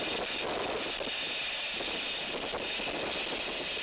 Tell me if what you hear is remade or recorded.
recorded